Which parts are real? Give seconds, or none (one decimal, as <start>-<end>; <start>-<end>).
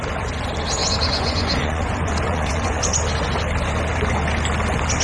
0.0-0.8; 2.8-5.0